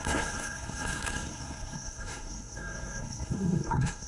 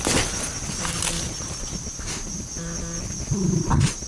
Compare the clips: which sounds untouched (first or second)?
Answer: second